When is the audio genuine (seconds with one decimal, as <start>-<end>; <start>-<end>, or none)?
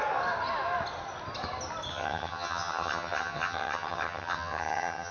0.0-1.9